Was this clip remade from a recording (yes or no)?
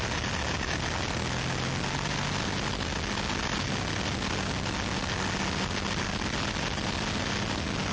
no